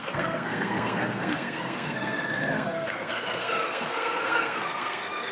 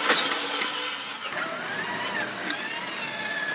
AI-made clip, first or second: first